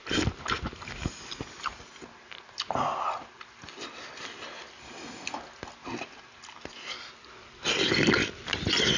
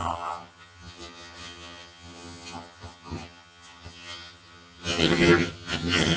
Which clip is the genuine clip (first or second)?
first